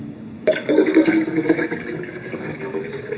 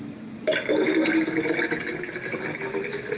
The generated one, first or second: first